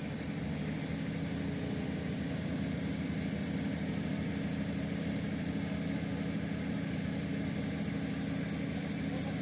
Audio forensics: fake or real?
real